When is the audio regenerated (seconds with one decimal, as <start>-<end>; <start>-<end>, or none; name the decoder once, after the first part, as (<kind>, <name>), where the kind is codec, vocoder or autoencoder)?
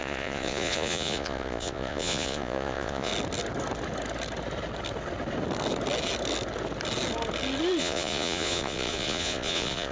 0.0-3.1 (vocoder, Vocos); 7.8-9.9